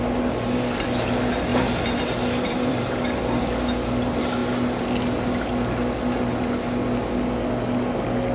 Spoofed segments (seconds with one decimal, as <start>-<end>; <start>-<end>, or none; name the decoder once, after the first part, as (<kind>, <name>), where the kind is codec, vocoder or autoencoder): 1.5-3.4 (vocoder, BigVGAN v2)